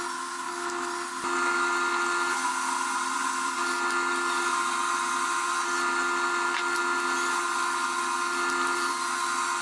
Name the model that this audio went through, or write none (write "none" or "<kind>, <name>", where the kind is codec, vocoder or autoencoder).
none